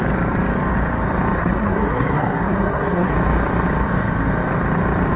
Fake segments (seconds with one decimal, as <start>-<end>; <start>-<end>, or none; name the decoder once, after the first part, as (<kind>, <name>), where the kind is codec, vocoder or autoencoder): 1.4-3.1 (codec, SNAC)